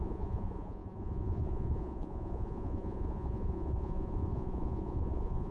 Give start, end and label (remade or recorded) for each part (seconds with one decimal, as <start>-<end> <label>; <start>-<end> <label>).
0.0-5.5 remade